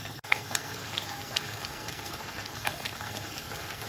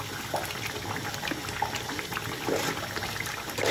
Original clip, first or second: second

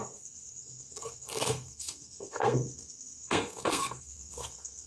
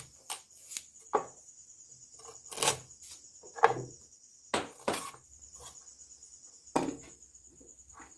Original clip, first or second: second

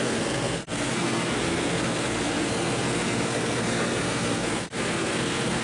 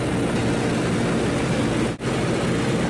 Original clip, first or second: second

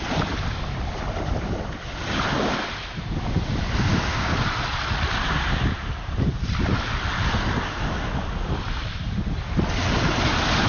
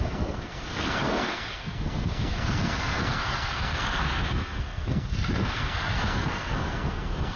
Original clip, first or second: first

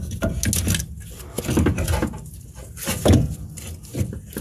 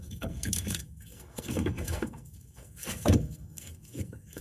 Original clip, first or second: first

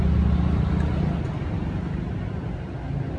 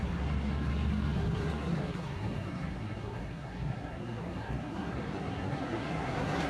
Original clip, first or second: first